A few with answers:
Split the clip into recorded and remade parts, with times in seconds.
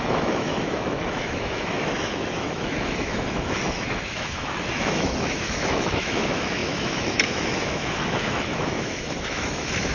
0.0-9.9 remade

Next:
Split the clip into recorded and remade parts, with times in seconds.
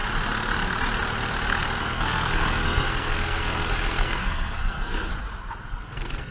0.0-1.8 recorded; 1.8-5.1 remade; 5.1-5.7 recorded; 5.7-6.3 remade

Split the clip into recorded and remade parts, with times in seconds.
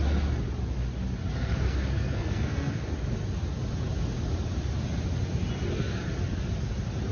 0.0-1.2 recorded; 1.2-2.9 remade; 2.9-7.1 recorded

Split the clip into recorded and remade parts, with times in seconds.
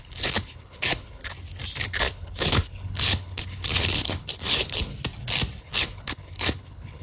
0.0-1.2 remade; 1.2-1.8 recorded; 1.8-4.9 remade; 4.9-5.6 recorded; 5.6-7.0 remade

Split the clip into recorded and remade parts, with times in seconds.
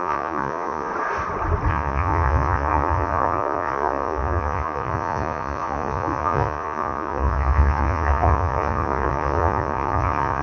0.0-0.9 remade; 0.9-1.7 recorded; 1.7-10.4 remade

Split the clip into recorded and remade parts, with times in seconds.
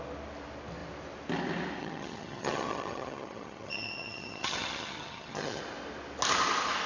0.0-1.8 recorded; 1.8-5.6 remade; 5.6-6.9 recorded